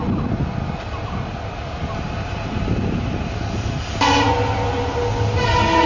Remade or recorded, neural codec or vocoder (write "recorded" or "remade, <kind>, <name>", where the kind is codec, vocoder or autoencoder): recorded